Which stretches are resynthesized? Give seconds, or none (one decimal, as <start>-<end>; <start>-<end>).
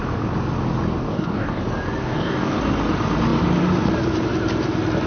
1.0-1.6; 2.0-2.6